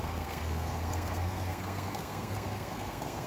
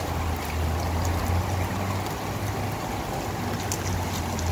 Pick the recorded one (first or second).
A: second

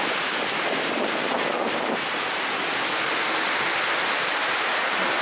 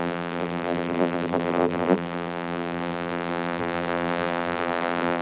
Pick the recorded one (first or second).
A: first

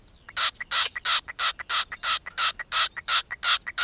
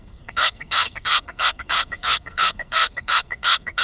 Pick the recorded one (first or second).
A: first